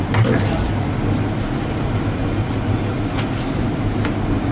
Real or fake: real